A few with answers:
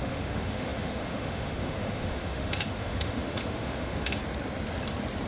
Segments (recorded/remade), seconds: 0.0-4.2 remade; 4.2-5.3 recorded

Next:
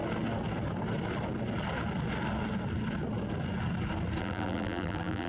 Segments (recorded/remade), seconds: 0.0-4.2 recorded; 4.2-5.3 remade

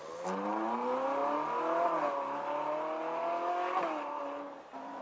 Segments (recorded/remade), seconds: 0.0-5.0 recorded

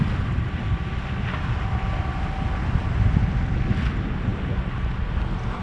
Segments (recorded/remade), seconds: 0.0-5.6 recorded

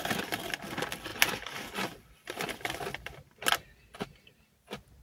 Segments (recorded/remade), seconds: 0.0-5.0 recorded

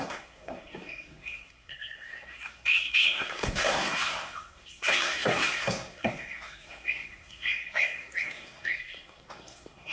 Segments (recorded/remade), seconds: 0.0-9.9 remade

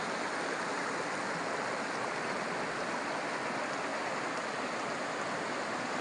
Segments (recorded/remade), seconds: 0.0-6.0 recorded